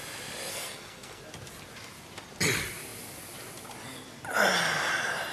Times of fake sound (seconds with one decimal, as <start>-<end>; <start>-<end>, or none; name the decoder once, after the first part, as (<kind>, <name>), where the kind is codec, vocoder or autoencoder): 0.5-1.2 (codec, SNAC)